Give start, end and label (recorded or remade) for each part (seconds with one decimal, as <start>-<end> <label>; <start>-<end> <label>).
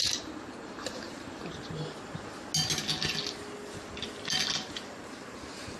0.0-1.4 remade; 1.4-4.9 recorded; 4.9-5.8 remade